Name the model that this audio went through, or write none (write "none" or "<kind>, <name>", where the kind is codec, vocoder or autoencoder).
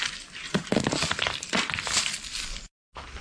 none